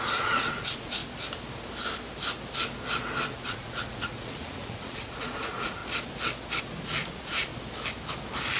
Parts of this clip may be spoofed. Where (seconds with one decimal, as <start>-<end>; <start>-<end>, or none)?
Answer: 0.0-1.0; 3.3-5.8; 6.6-7.5